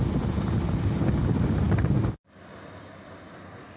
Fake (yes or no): no